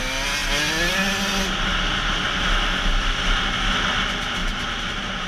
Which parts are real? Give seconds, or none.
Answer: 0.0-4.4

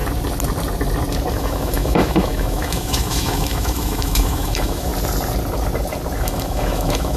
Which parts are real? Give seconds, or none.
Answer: 0.0-1.3; 4.9-6.2

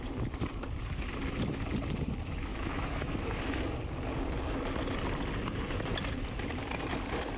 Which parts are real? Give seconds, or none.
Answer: 0.0-2.5; 3.4-7.4

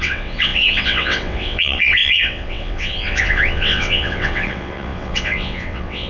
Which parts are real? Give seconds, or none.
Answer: none

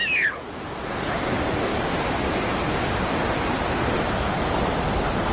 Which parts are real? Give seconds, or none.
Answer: 0.0-1.7; 4.1-5.3

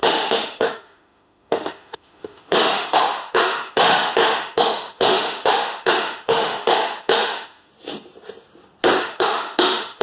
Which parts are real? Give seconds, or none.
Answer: 7.7-9.0

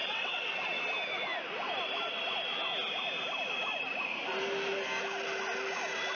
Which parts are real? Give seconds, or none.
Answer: 0.8-6.1

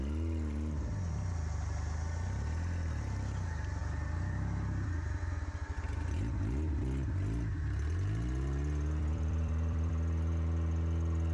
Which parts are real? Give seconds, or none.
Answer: 0.0-3.8; 5.2-9.0; 9.9-11.3